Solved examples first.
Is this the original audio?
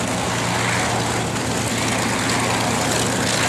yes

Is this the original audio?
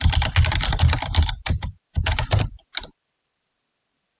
yes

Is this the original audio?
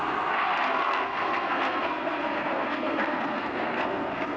no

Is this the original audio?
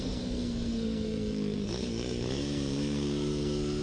no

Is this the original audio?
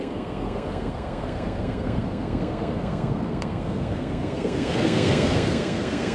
no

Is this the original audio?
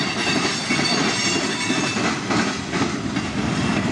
yes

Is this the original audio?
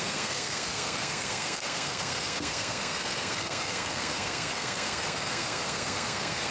no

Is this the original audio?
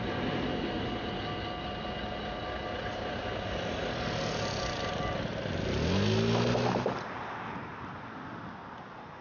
yes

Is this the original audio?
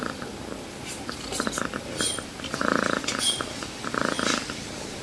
yes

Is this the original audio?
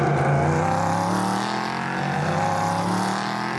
yes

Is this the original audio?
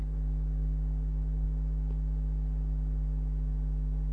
yes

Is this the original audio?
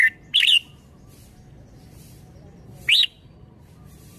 yes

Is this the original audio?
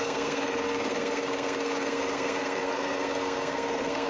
no